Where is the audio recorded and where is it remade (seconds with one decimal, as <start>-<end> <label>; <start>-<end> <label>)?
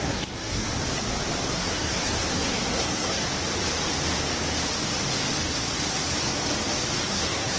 0.0-0.7 remade; 0.7-1.5 recorded; 1.5-3.2 remade; 3.2-7.1 recorded; 7.1-7.6 remade